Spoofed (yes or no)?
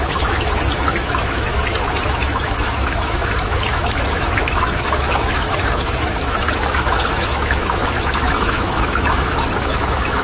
yes